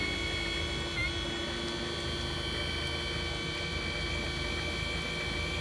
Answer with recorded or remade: recorded